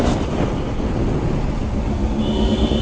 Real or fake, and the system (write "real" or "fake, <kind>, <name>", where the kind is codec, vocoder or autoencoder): real